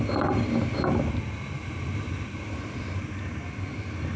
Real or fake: real